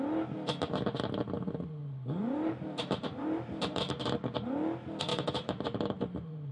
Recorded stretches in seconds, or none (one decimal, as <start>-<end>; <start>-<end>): 0.0-1.8; 3.9-5.1